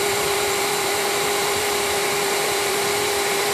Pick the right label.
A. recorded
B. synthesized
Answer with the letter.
B